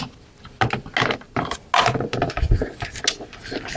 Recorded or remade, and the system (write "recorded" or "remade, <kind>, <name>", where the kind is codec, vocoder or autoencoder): recorded